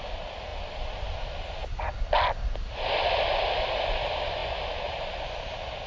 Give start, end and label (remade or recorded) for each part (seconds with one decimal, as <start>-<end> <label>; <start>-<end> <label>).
0.0-5.9 recorded